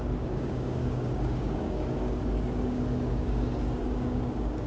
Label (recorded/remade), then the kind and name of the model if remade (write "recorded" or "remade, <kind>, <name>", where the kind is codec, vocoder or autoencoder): remade, codec, DAC